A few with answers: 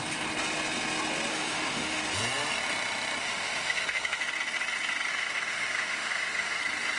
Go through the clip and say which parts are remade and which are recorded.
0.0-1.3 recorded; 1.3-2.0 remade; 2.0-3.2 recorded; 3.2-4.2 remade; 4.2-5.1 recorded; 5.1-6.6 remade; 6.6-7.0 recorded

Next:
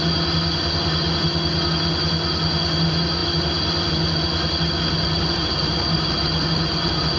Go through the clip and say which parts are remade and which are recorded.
0.0-7.2 recorded

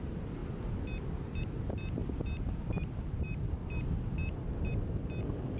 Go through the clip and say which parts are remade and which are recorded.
0.0-5.6 recorded

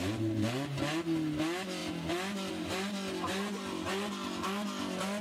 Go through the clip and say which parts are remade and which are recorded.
0.0-5.2 recorded

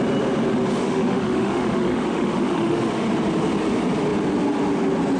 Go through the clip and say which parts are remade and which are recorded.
0.0-0.8 recorded; 0.8-2.8 remade; 2.8-5.2 recorded